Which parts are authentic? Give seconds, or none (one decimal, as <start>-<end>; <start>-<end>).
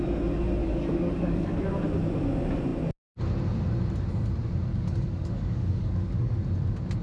0.0-0.6; 1.6-4.7; 6.4-7.0